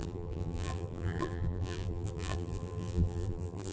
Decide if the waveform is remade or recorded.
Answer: remade